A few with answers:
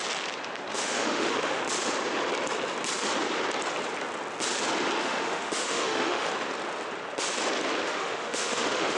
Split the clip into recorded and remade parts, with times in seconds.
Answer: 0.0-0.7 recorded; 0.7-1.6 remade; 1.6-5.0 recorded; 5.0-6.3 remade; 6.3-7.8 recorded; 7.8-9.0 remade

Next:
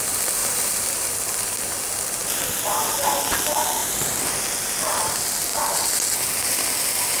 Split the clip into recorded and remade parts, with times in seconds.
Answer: 0.0-0.4 recorded; 0.4-1.6 remade; 1.6-7.2 recorded

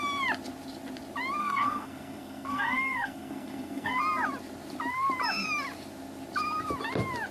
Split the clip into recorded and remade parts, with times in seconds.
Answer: 0.0-1.4 recorded; 1.4-4.0 remade; 4.0-7.3 recorded

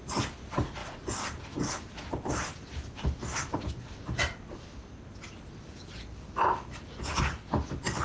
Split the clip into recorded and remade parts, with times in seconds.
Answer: 0.0-8.0 recorded

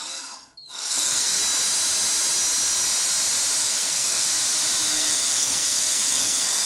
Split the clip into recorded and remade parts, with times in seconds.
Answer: 0.0-1.4 remade; 1.4-3.6 recorded; 3.6-4.3 remade; 4.3-4.9 recorded; 4.9-6.7 remade